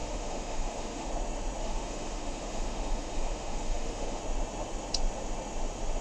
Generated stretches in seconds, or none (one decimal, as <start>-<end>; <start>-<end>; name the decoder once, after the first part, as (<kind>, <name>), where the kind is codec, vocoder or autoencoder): 0.0-1.1 (autoencoder, DAC-VAE); 1.6-4.2